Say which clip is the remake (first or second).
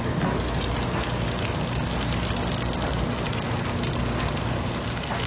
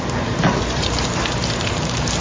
second